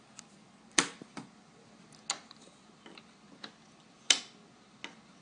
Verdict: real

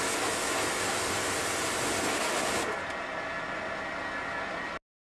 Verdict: real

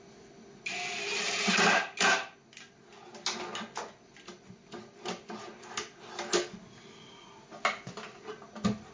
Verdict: real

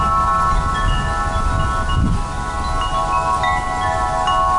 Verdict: real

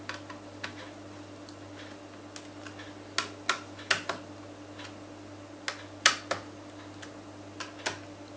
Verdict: real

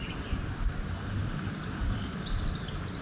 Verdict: real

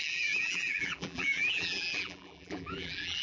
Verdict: fake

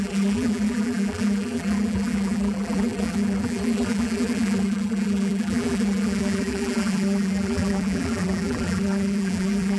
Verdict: fake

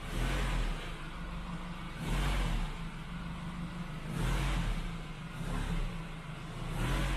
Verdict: real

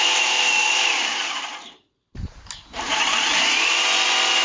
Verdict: fake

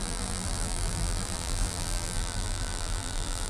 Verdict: fake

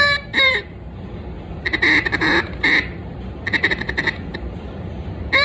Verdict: fake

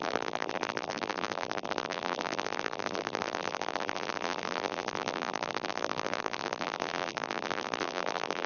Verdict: fake